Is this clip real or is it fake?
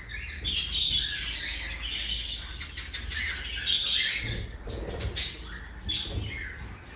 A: real